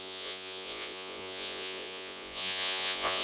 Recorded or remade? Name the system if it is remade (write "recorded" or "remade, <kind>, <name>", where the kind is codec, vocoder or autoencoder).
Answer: remade, vocoder, Vocos